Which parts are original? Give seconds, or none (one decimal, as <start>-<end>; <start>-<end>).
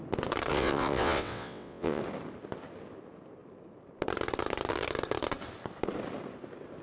0.0-0.5; 2.0-6.8